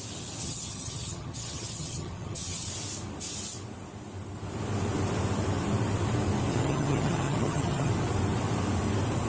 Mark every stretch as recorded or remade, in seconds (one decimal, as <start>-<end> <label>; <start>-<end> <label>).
0.0-0.4 recorded; 0.4-2.7 remade; 2.7-6.5 recorded; 6.5-7.9 remade; 7.9-9.3 recorded